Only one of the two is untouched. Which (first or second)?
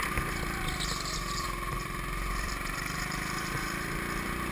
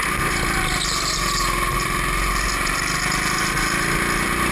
second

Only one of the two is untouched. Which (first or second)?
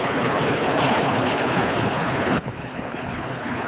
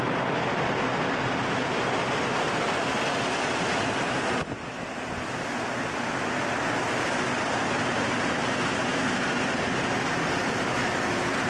second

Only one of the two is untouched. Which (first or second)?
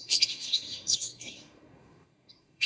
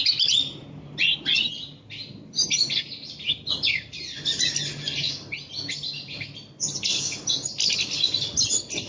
second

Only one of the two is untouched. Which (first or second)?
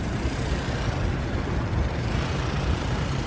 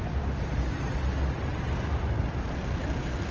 second